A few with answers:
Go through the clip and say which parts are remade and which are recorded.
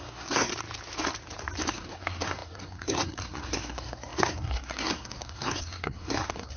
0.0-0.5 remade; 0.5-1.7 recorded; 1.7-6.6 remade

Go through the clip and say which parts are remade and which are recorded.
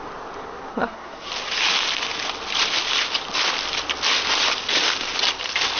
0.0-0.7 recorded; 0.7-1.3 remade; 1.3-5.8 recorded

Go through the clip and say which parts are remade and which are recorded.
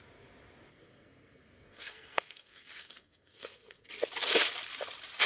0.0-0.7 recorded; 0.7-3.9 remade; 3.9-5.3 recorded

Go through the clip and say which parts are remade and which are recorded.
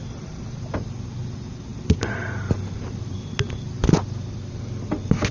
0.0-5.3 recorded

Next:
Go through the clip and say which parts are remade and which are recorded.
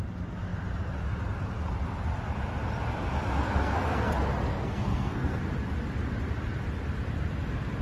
0.0-3.4 recorded; 3.4-4.1 remade; 4.1-4.5 recorded; 4.5-5.4 remade; 5.4-7.8 recorded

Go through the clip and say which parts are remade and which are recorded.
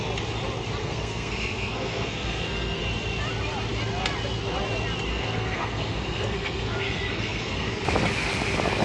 0.0-0.8 recorded; 0.8-2.8 remade; 2.8-5.1 recorded; 5.1-7.7 remade; 7.7-8.8 recorded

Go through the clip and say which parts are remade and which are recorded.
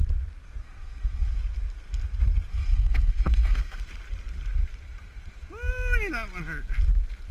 0.0-0.6 recorded; 0.6-1.4 remade; 1.4-2.5 recorded; 2.5-3.8 remade; 3.8-7.3 recorded